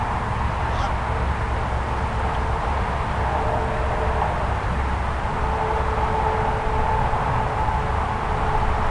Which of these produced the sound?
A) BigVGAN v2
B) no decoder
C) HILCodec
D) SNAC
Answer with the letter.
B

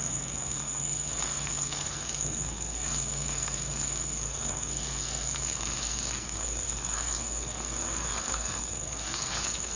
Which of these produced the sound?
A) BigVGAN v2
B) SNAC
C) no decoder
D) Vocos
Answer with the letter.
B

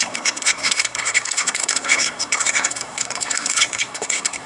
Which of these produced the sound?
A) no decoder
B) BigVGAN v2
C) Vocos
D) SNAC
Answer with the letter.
D